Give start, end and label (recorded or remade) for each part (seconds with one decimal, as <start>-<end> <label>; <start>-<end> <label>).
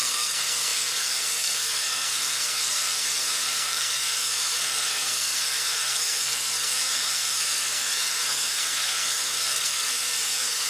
0.0-10.7 remade